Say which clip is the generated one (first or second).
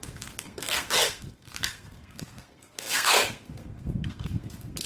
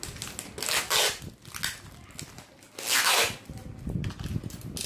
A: first